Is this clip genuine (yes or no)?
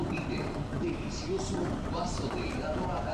no